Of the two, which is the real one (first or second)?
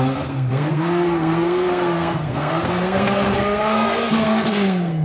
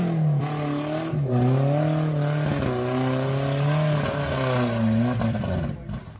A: second